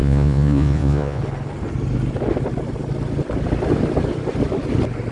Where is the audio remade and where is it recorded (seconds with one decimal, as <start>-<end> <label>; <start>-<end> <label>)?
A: 0.0-1.2 remade; 1.2-5.1 recorded